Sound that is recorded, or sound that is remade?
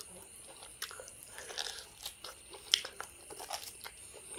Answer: remade